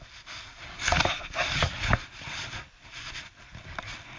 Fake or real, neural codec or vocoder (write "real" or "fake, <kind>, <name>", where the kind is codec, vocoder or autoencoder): real